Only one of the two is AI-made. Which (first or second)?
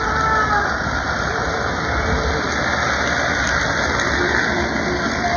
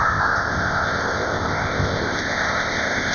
second